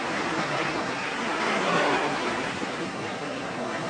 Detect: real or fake fake